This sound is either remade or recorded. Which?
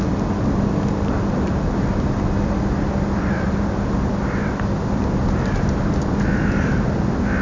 recorded